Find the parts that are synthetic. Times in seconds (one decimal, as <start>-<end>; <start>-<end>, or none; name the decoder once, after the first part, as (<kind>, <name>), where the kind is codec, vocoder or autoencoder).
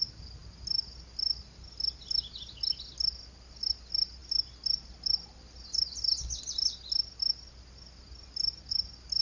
none